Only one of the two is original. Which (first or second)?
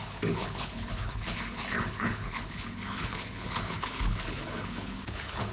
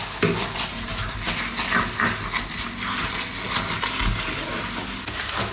second